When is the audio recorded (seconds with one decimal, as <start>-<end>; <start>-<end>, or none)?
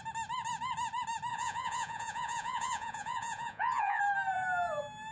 0.0-1.3; 4.0-5.1